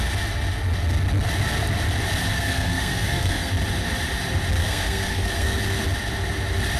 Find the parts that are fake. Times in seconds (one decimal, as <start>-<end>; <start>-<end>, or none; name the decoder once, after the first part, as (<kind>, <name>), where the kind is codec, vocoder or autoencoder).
2.3-3.5 (codec, SNAC); 4.6-5.6